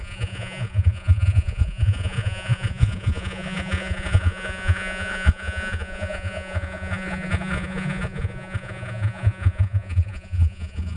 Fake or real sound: fake